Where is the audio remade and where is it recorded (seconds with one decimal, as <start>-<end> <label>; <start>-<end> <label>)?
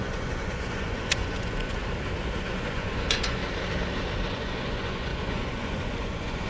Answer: 0.0-1.8 remade; 1.8-2.4 recorded; 2.4-3.4 remade; 3.4-4.3 recorded; 4.3-6.5 remade